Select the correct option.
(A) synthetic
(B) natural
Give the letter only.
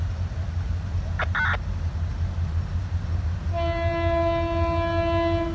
B